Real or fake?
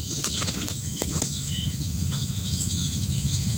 fake